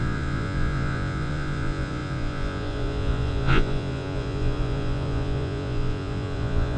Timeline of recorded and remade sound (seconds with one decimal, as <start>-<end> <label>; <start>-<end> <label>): 0.0-6.8 remade